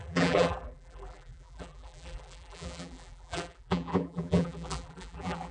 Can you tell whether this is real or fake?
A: fake